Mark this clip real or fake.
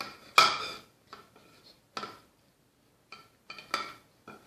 real